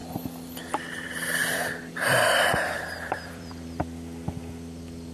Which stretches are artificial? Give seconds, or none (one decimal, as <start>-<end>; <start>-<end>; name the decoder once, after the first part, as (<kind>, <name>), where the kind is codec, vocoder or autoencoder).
1.4-3.8 (vocoder, BigVGAN v2)